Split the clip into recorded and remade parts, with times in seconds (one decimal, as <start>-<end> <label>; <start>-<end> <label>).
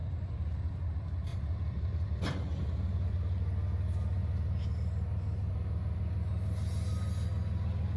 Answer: 0.0-0.9 remade; 0.9-1.3 recorded; 1.3-3.1 remade; 3.1-4.2 recorded; 4.2-5.5 remade; 5.5-8.0 recorded